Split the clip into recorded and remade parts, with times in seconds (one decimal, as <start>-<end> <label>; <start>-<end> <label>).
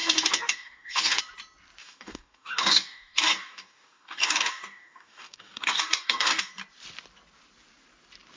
0.0-1.2 remade; 1.2-1.8 recorded; 1.8-6.5 remade; 6.5-8.4 recorded